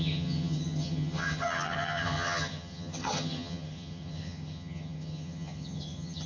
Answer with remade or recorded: remade